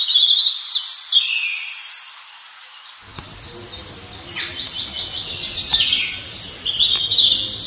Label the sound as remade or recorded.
recorded